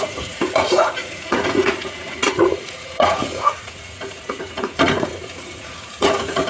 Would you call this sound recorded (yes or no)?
no